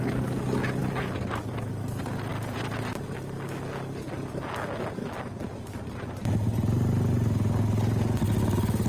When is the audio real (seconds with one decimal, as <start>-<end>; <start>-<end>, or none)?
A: 0.0-0.8; 1.8-2.3; 2.8-5.0; 5.9-8.9